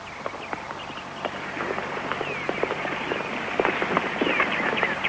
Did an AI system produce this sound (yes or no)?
no